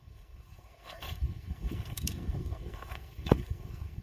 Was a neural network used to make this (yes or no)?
yes